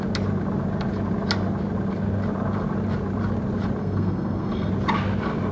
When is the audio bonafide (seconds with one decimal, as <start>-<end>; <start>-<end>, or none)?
0.0-3.8; 4.7-5.5